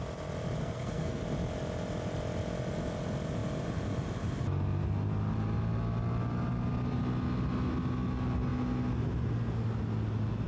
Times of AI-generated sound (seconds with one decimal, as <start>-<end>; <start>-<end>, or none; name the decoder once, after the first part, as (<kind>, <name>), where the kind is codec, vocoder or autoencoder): 0.6-1.2 (codec, SNAC)